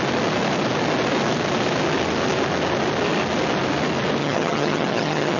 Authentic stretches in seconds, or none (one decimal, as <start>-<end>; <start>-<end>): 0.0-4.2

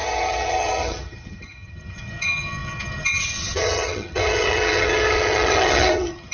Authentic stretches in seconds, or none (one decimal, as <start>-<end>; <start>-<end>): none

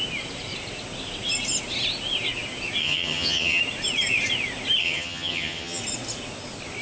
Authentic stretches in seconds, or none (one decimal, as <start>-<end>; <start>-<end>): 0.0-2.8; 3.6-4.8; 5.8-6.8

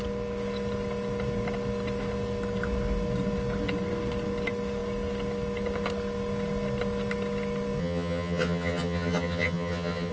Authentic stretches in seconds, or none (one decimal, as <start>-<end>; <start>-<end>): 0.0-7.8